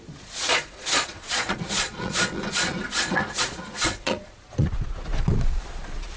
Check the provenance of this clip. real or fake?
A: fake